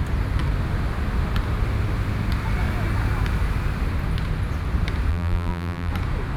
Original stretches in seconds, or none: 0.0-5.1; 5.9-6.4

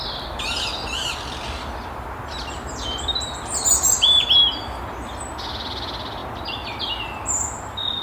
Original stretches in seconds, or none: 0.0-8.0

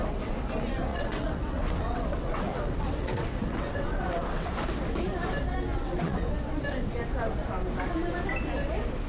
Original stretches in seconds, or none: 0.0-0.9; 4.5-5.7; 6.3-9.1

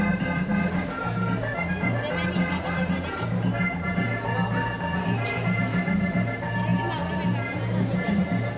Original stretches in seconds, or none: 0.0-8.6